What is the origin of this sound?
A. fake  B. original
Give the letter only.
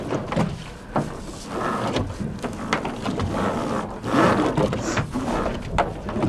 B